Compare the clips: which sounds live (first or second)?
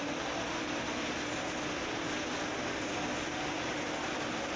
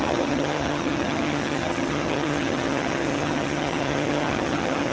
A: first